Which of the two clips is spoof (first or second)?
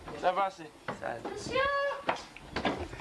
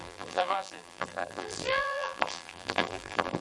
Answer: second